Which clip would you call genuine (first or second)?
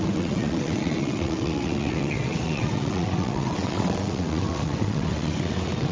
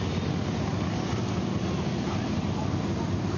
second